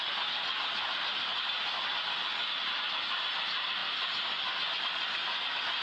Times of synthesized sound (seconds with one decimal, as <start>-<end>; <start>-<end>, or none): none